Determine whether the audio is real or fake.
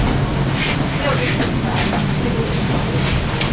real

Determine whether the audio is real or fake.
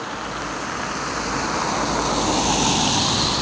real